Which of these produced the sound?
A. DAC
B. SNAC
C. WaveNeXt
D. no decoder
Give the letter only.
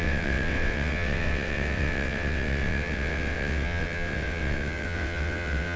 C